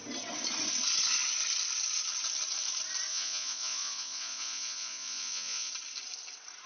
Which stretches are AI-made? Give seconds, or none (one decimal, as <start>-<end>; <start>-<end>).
3.1-5.7